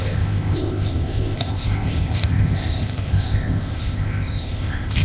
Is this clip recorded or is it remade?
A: remade